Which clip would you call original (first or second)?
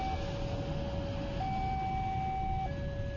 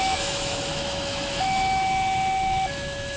first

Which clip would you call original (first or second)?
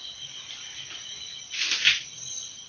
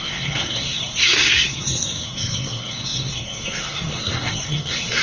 first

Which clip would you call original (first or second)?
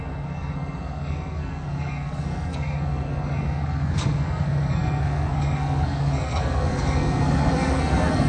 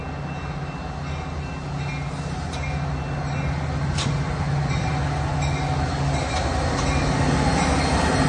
second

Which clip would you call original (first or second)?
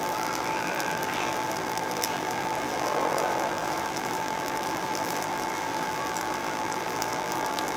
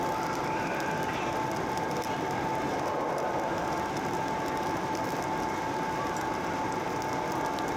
second